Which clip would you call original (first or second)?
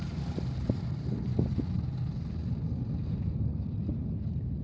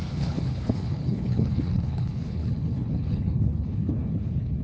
first